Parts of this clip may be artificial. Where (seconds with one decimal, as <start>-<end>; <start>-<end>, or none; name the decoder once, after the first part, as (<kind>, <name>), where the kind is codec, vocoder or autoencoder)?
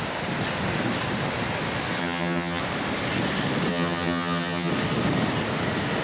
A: 2.0-2.6 (vocoder, HiFi-GAN); 3.7-4.7